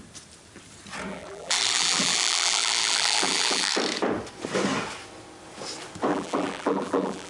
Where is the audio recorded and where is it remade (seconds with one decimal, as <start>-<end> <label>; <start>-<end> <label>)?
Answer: 0.0-1.1 recorded; 1.1-3.7 remade; 3.7-6.1 recorded; 6.1-7.3 remade